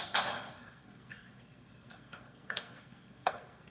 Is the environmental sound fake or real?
fake